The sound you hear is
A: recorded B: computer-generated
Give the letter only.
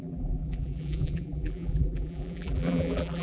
B